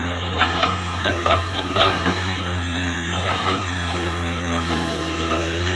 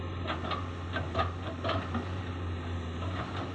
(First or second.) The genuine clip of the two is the second